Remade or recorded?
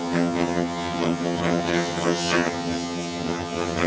remade